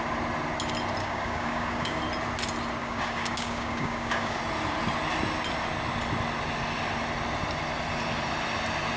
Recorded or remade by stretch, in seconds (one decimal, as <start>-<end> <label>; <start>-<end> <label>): 0.0-1.0 recorded; 1.0-2.0 remade; 2.0-2.8 recorded; 2.8-4.4 remade; 4.4-9.0 recorded